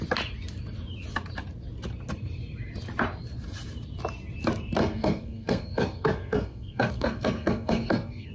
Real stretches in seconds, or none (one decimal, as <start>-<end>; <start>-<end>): 0.0-4.8